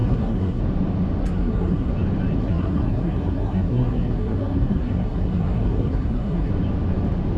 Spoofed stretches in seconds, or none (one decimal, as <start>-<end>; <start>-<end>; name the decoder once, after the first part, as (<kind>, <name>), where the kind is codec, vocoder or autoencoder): 0.0-0.6 (codec, SNAC); 1.2-1.9; 2.4-6.5